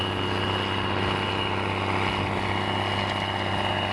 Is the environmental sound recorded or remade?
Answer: recorded